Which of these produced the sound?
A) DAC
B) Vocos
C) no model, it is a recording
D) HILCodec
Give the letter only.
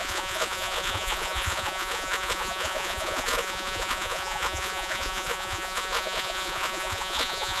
B